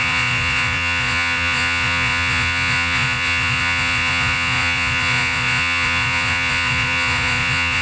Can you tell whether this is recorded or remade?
remade